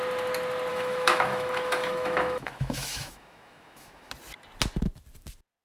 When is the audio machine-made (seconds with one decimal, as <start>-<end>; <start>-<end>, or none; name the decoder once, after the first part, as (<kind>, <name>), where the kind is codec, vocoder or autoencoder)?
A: 0.7-4.1 (autoencoder, DAC-VAE)